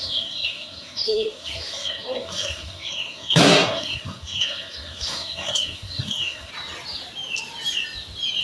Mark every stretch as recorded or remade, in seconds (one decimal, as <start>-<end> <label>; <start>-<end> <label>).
0.0-6.5 remade; 6.5-8.4 recorded